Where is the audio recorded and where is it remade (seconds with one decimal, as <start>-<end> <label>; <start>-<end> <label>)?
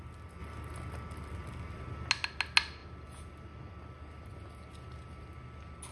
0.0-5.9 recorded